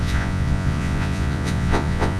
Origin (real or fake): fake